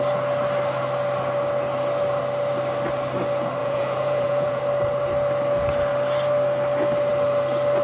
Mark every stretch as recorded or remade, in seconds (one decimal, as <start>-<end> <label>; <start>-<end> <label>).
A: 0.0-3.6 recorded; 3.6-4.6 remade; 4.6-7.8 recorded